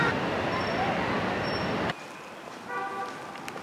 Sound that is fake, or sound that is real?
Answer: real